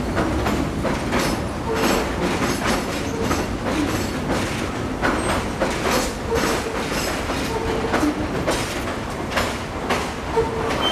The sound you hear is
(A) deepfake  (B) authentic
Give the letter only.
B